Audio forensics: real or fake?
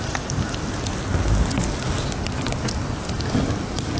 real